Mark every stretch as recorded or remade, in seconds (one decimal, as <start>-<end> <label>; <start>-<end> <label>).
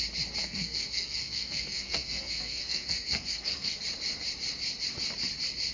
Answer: 0.0-0.4 recorded; 0.4-3.8 remade; 3.8-5.7 recorded